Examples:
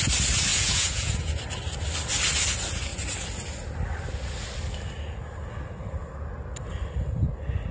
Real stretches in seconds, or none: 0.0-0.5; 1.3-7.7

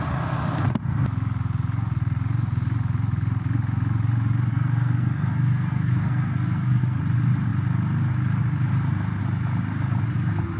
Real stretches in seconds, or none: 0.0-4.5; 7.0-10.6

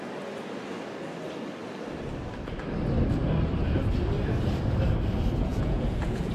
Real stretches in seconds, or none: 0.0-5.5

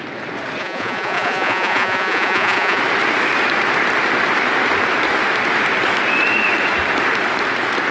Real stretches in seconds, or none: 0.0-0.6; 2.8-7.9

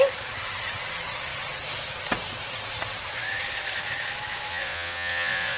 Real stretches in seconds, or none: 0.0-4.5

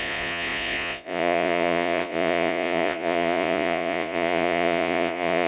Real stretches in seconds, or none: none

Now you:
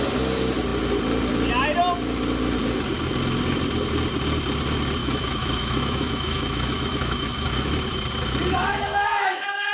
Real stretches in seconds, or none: 0.0-5.0; 7.7-8.7